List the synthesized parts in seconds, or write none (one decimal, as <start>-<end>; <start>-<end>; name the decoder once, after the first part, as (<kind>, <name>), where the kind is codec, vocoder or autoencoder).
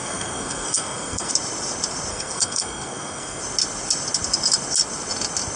0.0-1.3 (codec, SNAC); 2.1-3.4